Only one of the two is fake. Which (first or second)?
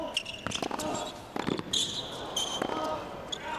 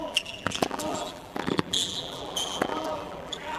second